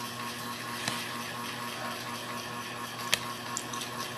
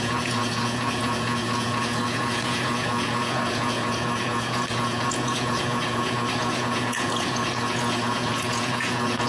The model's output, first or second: second